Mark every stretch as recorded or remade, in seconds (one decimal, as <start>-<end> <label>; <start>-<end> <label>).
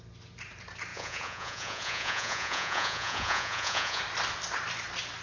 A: 0.0-0.9 recorded; 0.9-4.0 remade; 4.0-5.2 recorded